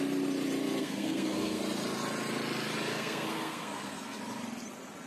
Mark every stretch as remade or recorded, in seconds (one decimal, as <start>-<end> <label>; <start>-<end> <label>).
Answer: 0.0-0.8 recorded; 0.8-1.6 remade; 1.6-2.9 recorded; 2.9-4.2 remade; 4.2-5.1 recorded